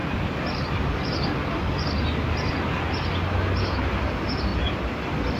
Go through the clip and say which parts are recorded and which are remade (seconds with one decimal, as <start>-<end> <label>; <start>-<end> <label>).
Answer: 0.0-5.4 recorded